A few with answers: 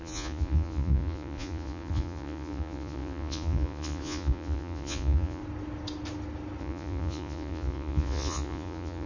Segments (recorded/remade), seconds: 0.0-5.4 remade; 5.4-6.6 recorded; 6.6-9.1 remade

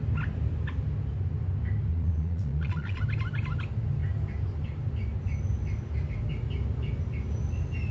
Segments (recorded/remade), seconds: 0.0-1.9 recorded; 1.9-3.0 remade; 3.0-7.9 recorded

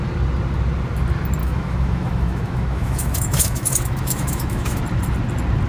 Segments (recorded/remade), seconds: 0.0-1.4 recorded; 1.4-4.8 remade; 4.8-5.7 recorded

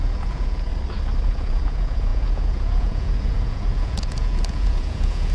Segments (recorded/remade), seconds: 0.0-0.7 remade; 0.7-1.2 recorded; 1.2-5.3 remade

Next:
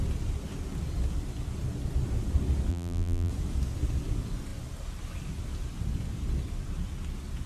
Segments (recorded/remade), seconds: 0.0-2.7 recorded; 2.7-3.3 remade; 3.3-7.5 recorded

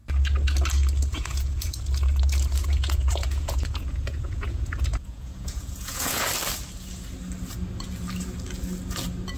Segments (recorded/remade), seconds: 0.0-1.1 recorded; 1.1-1.8 remade; 1.8-2.6 recorded; 2.6-6.3 remade; 6.3-9.4 recorded